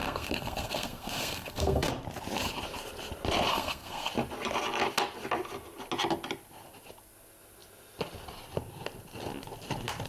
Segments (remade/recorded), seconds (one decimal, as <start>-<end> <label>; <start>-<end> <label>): 0.0-1.9 remade; 1.9-3.5 recorded; 3.5-4.1 remade; 4.1-10.1 recorded